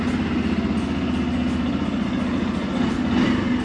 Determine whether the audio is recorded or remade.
recorded